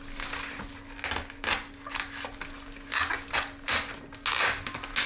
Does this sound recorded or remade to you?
recorded